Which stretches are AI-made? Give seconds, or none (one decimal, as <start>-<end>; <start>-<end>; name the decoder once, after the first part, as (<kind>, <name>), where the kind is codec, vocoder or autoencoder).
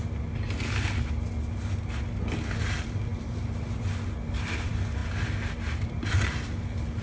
2.6-5.0 (vocoder, BigVGAN v2)